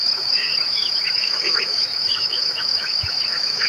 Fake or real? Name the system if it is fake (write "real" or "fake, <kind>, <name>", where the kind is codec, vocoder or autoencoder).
fake, autoencoder, DAC-VAE